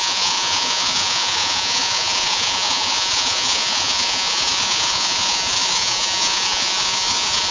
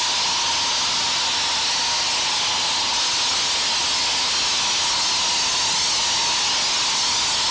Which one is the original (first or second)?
second